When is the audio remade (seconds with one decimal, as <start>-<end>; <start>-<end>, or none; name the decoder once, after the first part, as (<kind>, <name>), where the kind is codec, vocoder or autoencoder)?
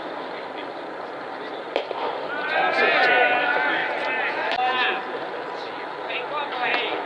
1.6-2.1 (vocoder, BigVGAN v2)